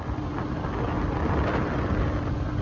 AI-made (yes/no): no